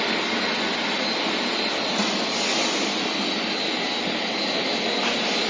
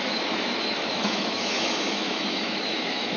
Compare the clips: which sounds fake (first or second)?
second